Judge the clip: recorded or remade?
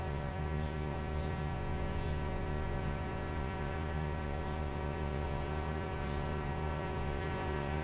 remade